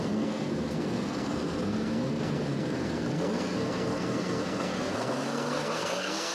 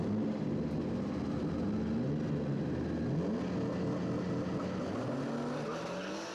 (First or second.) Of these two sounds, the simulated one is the first